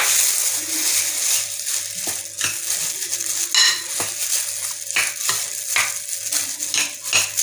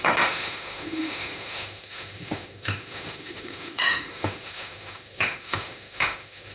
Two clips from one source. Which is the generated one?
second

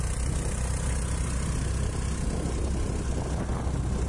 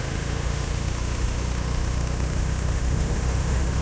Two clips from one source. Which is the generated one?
second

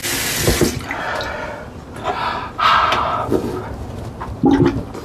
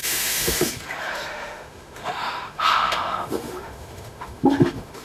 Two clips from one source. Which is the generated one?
second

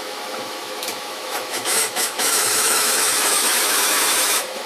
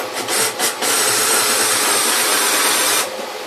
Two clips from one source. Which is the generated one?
first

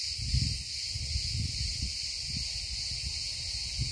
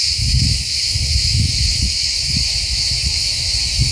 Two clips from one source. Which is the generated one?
second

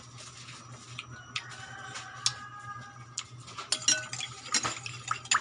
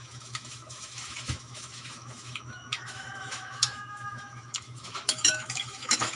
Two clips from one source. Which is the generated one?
second